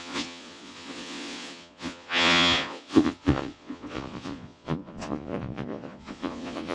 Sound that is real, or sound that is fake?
fake